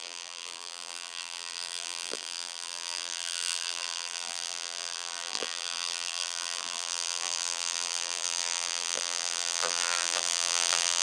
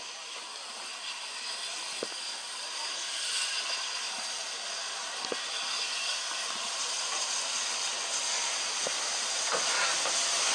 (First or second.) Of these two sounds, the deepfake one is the first